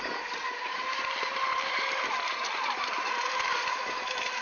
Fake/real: real